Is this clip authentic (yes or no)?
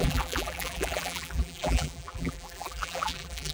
no